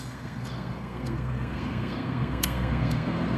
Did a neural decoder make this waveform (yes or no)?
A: yes